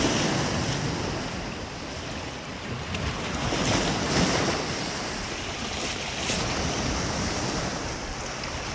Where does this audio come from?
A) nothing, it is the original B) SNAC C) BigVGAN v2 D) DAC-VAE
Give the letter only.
A